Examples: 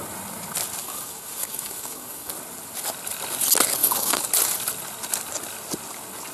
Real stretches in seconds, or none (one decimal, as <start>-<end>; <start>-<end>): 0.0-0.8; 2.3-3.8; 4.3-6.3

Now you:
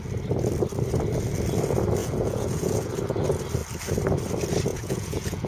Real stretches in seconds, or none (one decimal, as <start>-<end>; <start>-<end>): 0.0-2.0; 2.9-4.7

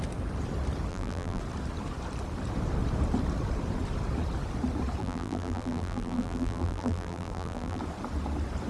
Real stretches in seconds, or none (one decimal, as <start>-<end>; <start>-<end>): 0.0-0.9; 1.4-5.0; 7.8-8.7

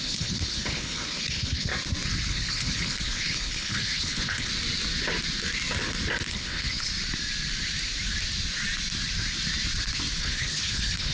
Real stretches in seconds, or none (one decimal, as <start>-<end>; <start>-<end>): 1.7-2.3; 4.5-6.3; 6.9-10.2

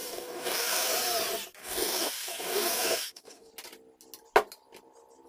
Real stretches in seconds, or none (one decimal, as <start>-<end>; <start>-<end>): 0.9-1.6; 3.5-5.3

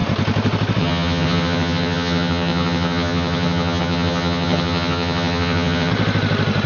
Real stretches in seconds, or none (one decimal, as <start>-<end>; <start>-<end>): 0.0-0.8; 5.9-6.7